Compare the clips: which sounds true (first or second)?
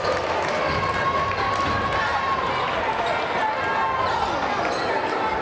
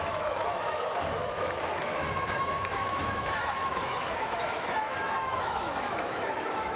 first